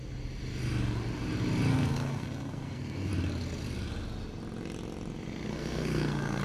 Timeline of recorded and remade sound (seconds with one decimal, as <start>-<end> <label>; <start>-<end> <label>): 0.0-1.7 recorded; 1.7-3.1 remade; 3.1-5.5 recorded; 5.5-6.4 remade